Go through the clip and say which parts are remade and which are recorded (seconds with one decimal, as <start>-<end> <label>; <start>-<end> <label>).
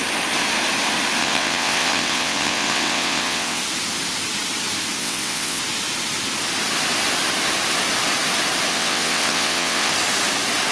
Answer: 0.0-1.2 recorded; 1.2-3.6 remade; 3.6-5.0 recorded; 5.0-5.6 remade; 5.6-8.7 recorded; 8.7-9.9 remade; 9.9-10.7 recorded